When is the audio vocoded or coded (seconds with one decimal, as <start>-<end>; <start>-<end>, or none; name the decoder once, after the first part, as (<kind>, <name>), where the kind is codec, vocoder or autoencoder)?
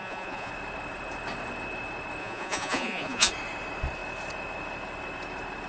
0.0-0.5 (vocoder, Vocos); 2.2-3.3